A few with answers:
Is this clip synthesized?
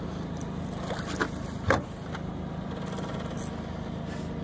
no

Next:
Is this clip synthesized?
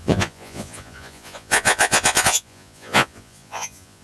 yes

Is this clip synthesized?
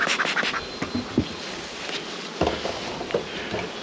no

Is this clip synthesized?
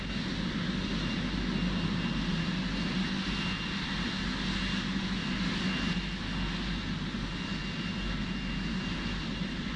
no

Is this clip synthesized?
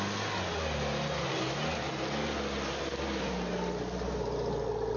no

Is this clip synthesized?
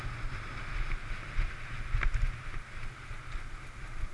no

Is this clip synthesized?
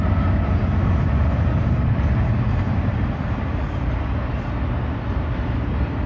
no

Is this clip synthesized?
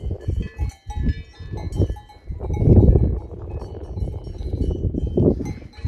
no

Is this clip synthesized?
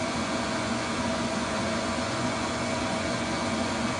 yes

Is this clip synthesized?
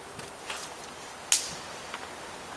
no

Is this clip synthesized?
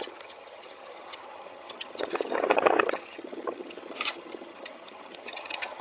yes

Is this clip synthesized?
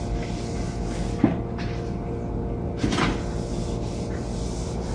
no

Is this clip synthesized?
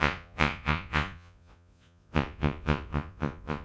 yes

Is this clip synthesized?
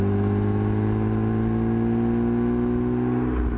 no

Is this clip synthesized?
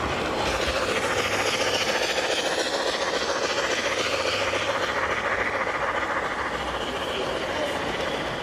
no